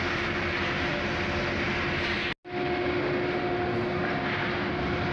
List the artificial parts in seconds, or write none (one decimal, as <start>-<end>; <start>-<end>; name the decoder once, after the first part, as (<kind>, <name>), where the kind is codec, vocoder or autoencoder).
none